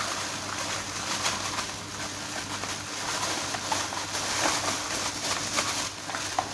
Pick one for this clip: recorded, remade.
recorded